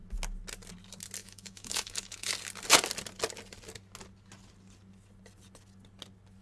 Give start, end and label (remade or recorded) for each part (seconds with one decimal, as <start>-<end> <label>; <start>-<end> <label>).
0.0-1.2 recorded; 1.2-2.3 remade; 2.3-6.4 recorded